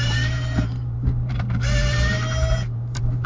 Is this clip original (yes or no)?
no